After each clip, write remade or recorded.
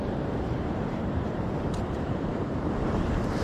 remade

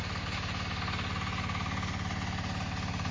recorded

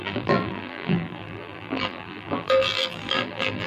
remade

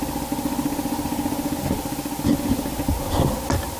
recorded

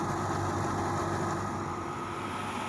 recorded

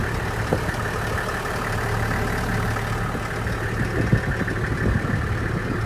recorded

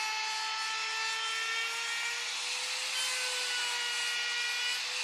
recorded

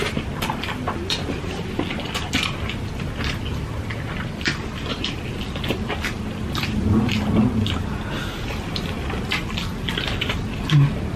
recorded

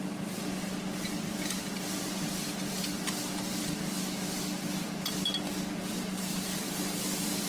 recorded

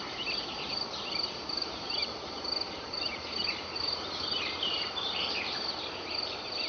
remade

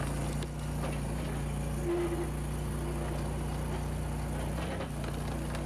recorded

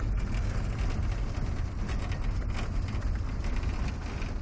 recorded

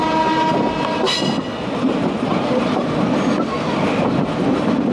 recorded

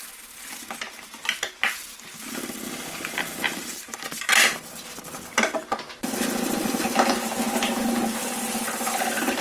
recorded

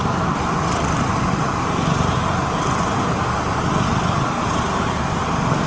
remade